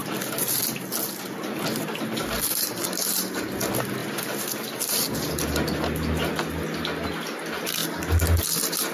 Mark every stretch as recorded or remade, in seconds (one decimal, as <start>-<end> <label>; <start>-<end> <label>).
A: 0.0-4.0 recorded; 4.0-4.8 remade; 4.8-8.9 recorded